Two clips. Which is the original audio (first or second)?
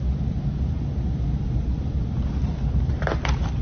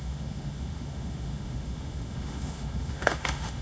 first